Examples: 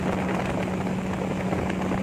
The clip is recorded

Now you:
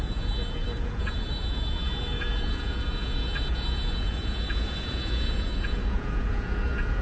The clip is remade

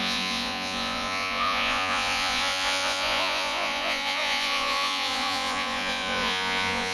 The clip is remade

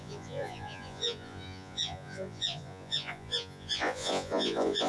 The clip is remade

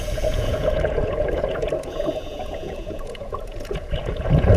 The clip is remade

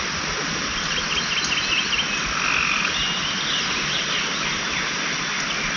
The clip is recorded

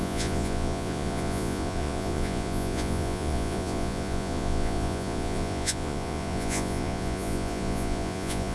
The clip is remade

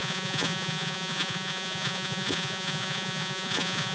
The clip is remade